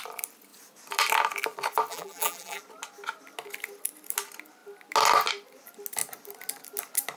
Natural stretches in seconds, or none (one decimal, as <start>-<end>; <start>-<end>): 0.0-1.9; 2.6-7.2